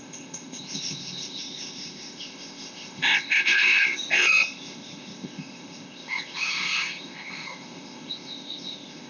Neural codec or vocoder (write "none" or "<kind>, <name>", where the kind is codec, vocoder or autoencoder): codec, ZipCodec